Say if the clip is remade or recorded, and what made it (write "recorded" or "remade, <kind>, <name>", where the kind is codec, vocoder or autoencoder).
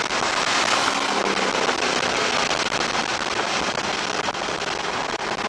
recorded